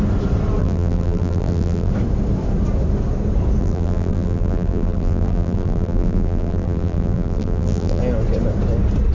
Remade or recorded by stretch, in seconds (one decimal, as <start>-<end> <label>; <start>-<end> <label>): 0.0-0.6 recorded; 0.6-1.9 remade; 1.9-3.6 recorded; 3.6-8.0 remade; 8.0-9.1 recorded